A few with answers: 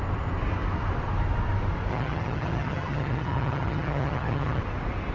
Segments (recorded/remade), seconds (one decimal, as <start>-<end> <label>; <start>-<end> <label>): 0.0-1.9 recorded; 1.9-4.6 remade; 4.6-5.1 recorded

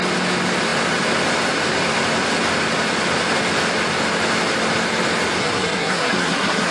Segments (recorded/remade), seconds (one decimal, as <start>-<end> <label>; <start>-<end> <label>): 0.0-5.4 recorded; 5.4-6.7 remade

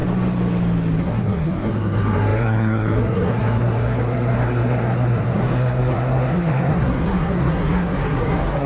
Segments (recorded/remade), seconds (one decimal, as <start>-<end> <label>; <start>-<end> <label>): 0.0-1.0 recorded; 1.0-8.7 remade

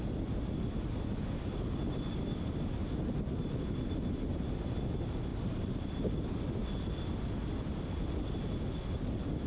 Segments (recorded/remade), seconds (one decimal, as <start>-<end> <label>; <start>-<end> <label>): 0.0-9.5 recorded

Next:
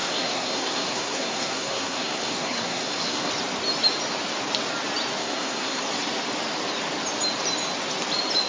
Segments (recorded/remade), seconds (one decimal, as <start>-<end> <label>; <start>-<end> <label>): 0.0-3.3 remade; 3.3-5.2 recorded; 5.2-5.8 remade; 5.8-8.5 recorded

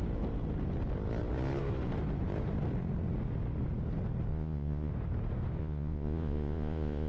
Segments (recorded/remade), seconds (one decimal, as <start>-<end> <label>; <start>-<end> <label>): 0.0-4.3 recorded; 4.3-4.9 remade; 4.9-5.6 recorded; 5.6-7.1 remade

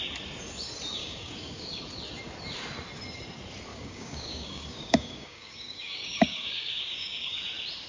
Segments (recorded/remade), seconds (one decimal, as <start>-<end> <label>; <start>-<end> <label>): 0.0-1.0 recorded; 1.0-1.8 remade; 1.8-3.7 recorded; 3.7-7.4 remade; 7.4-7.9 recorded

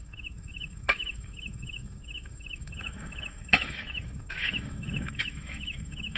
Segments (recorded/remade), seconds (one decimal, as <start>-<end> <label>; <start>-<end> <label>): 0.0-6.2 remade